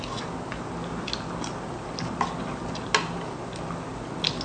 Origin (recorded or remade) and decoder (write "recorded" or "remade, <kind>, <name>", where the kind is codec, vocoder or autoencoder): recorded